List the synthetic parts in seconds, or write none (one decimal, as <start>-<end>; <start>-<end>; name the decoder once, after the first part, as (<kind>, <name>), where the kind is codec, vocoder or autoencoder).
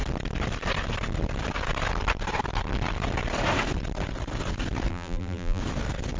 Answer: 4.9-5.6 (vocoder, BigVGAN v2)